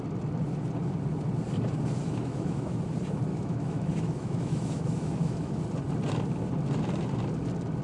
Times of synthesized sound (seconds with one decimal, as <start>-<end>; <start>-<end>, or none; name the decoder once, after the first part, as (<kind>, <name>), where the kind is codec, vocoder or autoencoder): 2.0-2.8 (autoencoder, DAC-VAE); 3.3-5.6